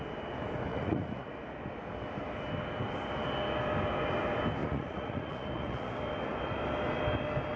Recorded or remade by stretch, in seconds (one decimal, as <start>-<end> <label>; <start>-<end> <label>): 0.0-0.7 recorded; 0.7-1.3 remade; 1.3-4.6 recorded; 4.6-5.9 remade; 5.9-7.6 recorded